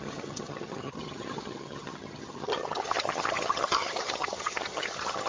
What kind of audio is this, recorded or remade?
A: remade